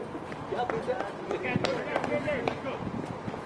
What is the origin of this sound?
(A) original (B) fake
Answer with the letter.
A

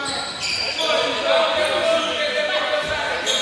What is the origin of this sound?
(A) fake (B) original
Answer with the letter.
B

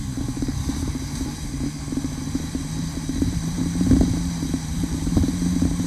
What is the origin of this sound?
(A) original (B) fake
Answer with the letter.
B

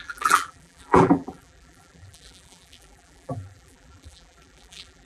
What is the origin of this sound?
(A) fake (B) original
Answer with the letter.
A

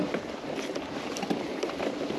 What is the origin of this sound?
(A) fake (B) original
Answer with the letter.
A